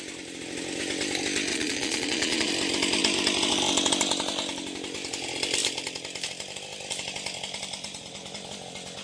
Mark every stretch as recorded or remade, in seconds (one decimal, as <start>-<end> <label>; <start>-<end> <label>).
0.0-1.5 recorded; 1.5-2.5 remade; 2.5-9.0 recorded

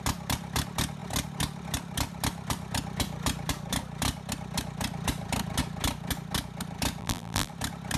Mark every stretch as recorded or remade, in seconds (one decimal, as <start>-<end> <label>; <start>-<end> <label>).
0.0-7.0 recorded; 7.0-7.5 remade; 7.5-8.0 recorded

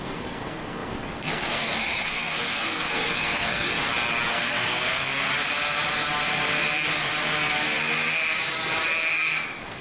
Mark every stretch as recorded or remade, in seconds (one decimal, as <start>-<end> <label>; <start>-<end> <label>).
0.0-3.7 remade; 3.7-4.3 recorded; 4.3-5.3 remade; 5.3-9.1 recorded; 9.1-9.8 remade

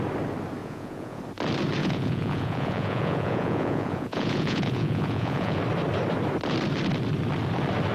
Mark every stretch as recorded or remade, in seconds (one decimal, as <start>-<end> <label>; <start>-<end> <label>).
0.0-0.6 recorded; 0.6-1.2 remade; 1.2-1.8 recorded; 1.8-5.6 remade; 5.6-7.9 recorded

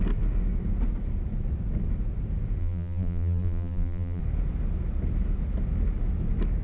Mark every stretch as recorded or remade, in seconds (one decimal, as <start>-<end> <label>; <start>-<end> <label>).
0.0-2.6 recorded; 2.6-4.2 remade; 4.2-6.6 recorded

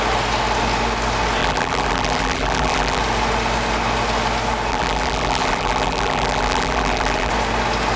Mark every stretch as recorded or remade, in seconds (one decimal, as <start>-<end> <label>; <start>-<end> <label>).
0.0-1.4 recorded; 1.4-3.0 remade; 3.0-4.7 recorded; 4.7-7.3 remade; 7.3-8.0 recorded

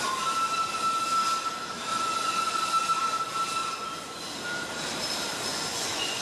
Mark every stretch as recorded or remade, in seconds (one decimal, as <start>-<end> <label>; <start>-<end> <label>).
0.0-1.9 recorded; 1.9-2.7 remade; 2.7-3.6 recorded; 3.6-4.3 remade; 4.3-5.5 recorded; 5.5-6.2 remade